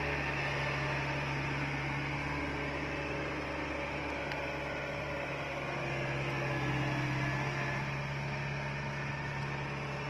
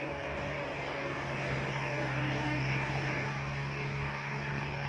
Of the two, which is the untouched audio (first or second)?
first